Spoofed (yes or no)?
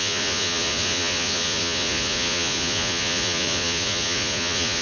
yes